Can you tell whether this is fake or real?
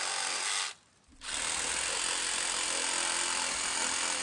real